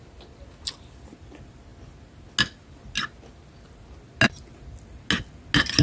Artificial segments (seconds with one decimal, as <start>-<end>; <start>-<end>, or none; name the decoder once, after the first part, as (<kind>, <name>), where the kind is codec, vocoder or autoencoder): none

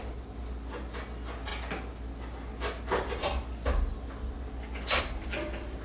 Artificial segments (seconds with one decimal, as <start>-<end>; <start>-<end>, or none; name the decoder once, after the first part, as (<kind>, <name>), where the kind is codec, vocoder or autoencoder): none

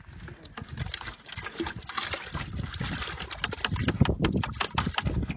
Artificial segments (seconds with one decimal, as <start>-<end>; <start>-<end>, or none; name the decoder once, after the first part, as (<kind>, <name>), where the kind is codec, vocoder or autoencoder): none

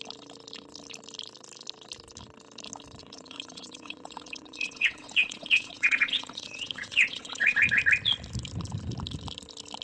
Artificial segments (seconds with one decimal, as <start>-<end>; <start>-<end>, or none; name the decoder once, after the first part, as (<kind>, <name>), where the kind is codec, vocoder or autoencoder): 3.0-7.8 (vocoder, WaveNeXt)

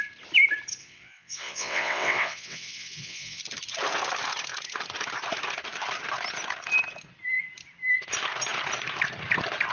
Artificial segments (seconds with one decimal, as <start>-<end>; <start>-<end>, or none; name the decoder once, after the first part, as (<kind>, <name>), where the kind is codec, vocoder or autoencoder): 0.8-3.4 (vocoder, WaveNeXt)

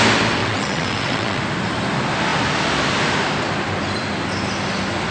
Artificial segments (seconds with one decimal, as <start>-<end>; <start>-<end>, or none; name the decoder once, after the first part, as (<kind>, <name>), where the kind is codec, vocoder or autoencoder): 0.4-1.4 (vocoder, WaveNeXt)